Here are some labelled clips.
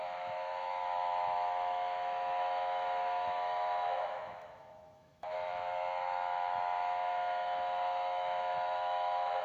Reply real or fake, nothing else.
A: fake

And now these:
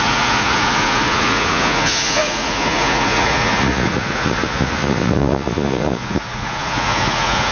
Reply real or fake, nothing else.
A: fake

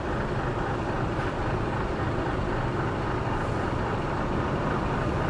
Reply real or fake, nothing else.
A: real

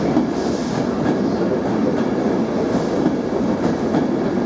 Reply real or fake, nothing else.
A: real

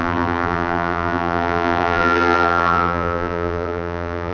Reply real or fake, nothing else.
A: fake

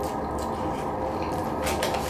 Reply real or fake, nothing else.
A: real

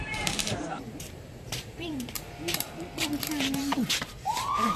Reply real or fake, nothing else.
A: fake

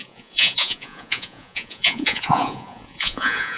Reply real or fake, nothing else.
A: fake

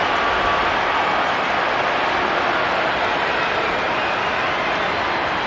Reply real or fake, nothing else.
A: real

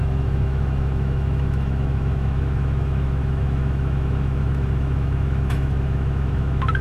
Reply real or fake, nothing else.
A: fake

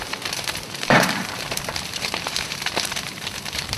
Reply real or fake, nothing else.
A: fake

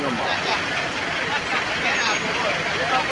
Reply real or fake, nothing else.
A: real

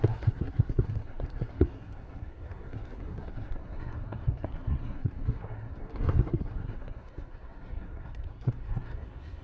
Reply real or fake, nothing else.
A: fake